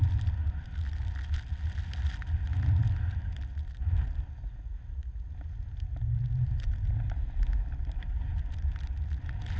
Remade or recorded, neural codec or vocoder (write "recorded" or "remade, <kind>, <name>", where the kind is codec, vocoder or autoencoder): recorded